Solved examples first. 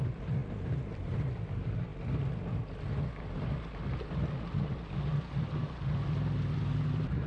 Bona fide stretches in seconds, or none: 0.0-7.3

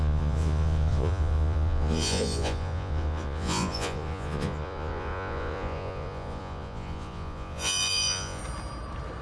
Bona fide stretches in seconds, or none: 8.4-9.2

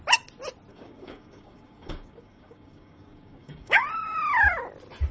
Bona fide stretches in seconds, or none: 0.0-0.7; 3.8-5.1